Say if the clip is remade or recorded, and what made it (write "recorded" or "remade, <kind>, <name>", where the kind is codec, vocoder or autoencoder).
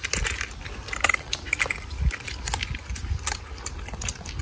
recorded